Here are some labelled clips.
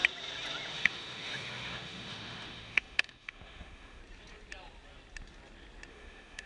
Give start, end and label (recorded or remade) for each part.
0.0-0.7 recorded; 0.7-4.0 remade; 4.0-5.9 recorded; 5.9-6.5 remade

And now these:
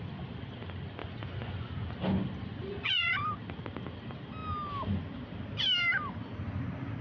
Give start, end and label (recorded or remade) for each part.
0.0-1.0 recorded; 1.0-1.7 remade; 1.7-2.5 recorded; 2.5-3.2 remade; 3.2-7.0 recorded

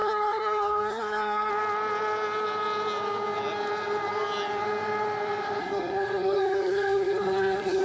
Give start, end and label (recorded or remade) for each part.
0.0-1.5 remade; 1.5-5.6 recorded; 5.6-7.8 remade

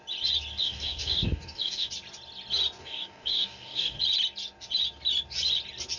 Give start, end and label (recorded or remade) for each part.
0.0-0.6 recorded; 0.6-1.9 remade; 1.9-2.8 recorded; 2.8-4.0 remade; 4.0-6.0 recorded

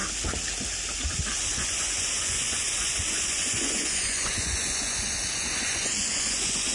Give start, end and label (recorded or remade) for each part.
0.0-1.1 recorded; 1.1-6.7 remade

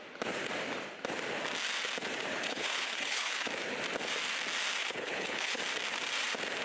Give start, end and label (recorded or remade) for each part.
0.0-2.3 recorded; 2.3-3.5 remade; 3.5-4.8 recorded; 4.8-5.6 remade; 5.6-6.6 recorded

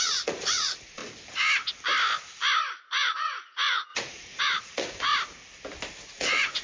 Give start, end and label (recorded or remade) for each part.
0.0-1.0 remade; 1.0-2.8 recorded; 2.8-5.1 remade; 5.1-6.1 recorded; 6.1-6.6 remade

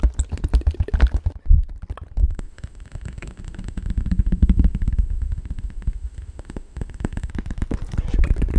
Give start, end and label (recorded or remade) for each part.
0.0-2.2 recorded; 2.2-7.3 remade; 7.3-8.6 recorded